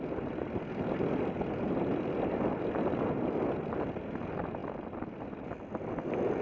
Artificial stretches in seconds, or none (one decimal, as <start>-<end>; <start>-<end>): none